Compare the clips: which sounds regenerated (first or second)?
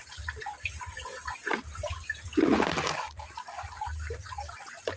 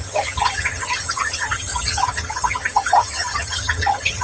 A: second